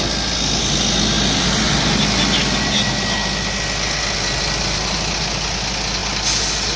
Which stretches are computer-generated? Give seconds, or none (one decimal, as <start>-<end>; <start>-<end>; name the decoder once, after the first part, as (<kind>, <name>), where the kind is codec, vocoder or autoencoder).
none